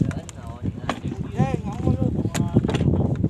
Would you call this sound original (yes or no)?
yes